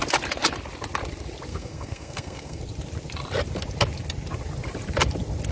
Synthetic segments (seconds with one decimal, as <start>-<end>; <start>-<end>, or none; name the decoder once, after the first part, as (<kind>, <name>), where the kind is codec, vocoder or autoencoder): 1.5-2.6 (codec, SNAC)

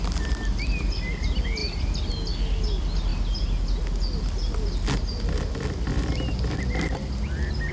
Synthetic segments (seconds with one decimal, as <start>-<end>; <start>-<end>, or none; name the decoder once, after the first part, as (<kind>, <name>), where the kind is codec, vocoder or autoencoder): none

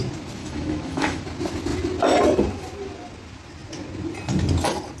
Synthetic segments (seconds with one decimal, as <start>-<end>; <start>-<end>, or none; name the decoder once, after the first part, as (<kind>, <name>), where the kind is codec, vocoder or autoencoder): 0.4-1.2 (autoencoder, DAC-VAE)

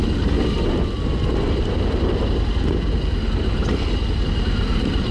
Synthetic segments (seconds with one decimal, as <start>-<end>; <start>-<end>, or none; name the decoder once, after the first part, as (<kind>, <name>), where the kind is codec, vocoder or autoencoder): none